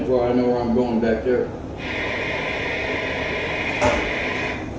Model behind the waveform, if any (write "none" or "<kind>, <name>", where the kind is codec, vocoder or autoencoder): none